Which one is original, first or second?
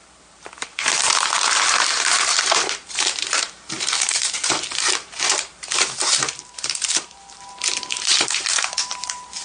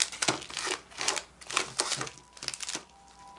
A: second